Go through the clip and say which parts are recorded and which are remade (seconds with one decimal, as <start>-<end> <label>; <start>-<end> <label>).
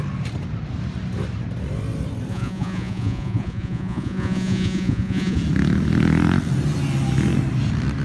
0.0-2.3 recorded; 2.3-5.4 remade; 5.4-8.0 recorded